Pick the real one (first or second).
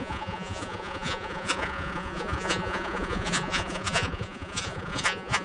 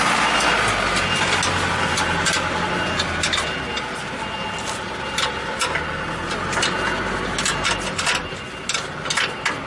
second